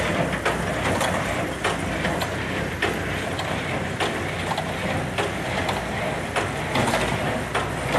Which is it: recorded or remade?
recorded